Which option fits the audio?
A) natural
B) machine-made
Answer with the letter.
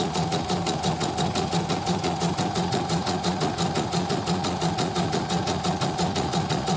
B